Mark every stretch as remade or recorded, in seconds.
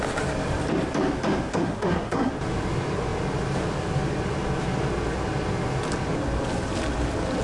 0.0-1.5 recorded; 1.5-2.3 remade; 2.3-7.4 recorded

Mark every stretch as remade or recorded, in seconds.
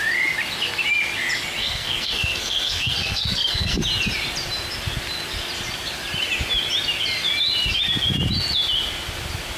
0.0-1.6 recorded; 1.6-3.8 remade; 3.8-9.6 recorded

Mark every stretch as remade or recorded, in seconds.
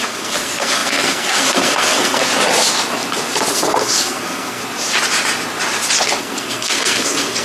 0.0-2.2 remade; 2.2-3.5 recorded; 3.5-4.6 remade; 4.6-6.2 recorded; 6.2-7.4 remade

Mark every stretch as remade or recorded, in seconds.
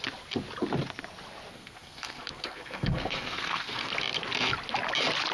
0.0-1.5 recorded; 1.5-3.9 remade; 3.9-5.3 recorded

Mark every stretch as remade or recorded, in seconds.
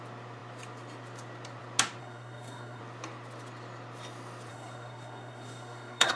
0.0-2.0 recorded; 2.0-2.8 remade; 2.8-4.5 recorded; 4.5-6.2 remade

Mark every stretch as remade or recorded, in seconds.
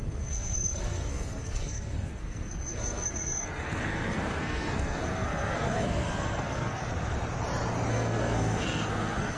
0.0-6.8 remade; 6.8-7.9 recorded; 7.9-9.4 remade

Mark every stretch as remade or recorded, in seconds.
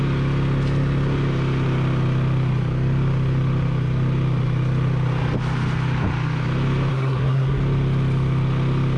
0.0-6.9 recorded; 6.9-7.6 remade; 7.6-9.0 recorded